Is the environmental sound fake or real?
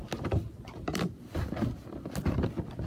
real